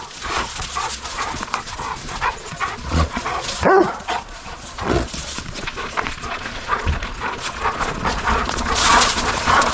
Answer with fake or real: fake